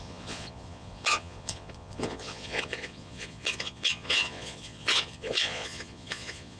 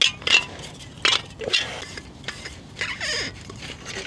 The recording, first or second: second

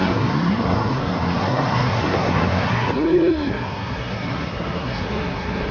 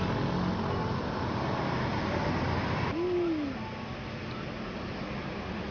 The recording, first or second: second